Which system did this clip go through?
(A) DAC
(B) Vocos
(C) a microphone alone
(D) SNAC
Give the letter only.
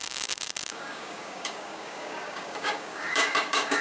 A